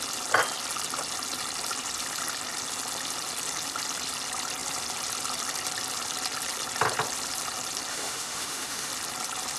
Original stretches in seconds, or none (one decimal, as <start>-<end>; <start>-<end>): 0.0-7.9; 8.9-9.6